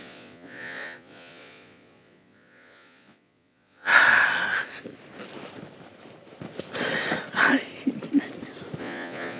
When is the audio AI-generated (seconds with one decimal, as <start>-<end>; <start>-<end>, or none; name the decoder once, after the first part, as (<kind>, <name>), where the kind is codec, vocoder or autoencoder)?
0.0-3.9 (vocoder, Vocos); 8.8-9.4